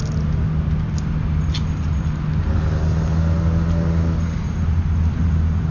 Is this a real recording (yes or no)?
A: yes